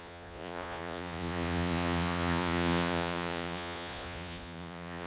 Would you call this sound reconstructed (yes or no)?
yes